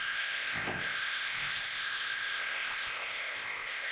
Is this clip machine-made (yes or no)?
yes